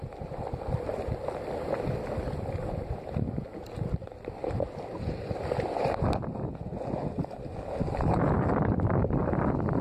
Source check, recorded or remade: recorded